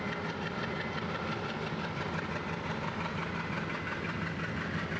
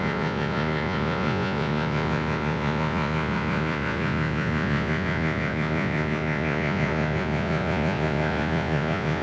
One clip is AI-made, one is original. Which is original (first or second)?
first